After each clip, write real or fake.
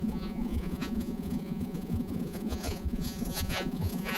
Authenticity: fake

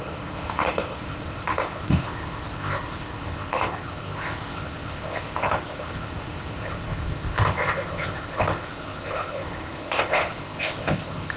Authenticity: fake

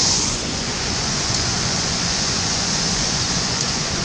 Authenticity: fake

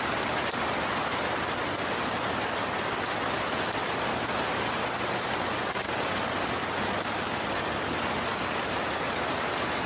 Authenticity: real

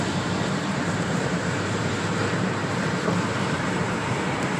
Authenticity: fake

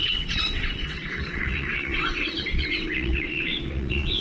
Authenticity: fake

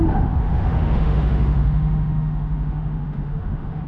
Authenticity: fake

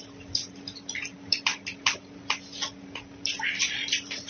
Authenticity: fake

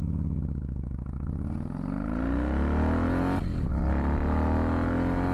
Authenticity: real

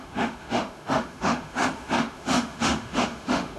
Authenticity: fake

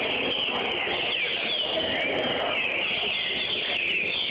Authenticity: real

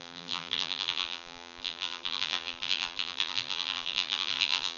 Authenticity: fake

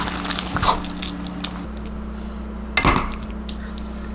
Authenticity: real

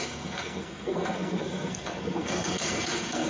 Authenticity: fake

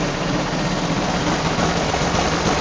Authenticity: fake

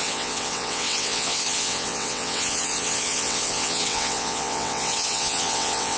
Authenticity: fake